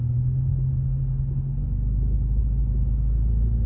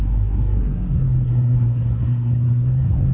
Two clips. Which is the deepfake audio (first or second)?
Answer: second